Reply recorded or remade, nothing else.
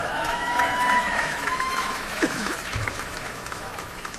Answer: remade